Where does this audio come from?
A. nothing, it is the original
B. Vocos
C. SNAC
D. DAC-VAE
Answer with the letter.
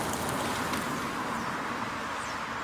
A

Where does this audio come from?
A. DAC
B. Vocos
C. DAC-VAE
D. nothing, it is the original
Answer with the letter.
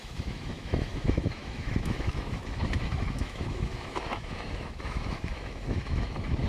C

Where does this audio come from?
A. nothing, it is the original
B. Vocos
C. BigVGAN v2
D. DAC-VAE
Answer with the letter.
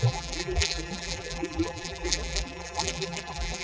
C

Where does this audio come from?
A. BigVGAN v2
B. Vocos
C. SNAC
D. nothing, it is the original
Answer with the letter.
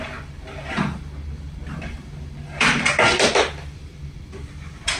D